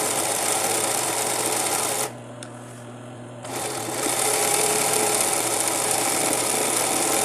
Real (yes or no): yes